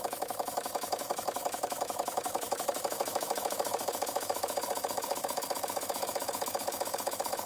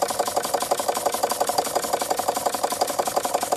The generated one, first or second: first